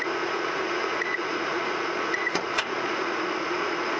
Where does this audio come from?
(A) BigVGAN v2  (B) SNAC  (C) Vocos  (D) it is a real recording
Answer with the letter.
C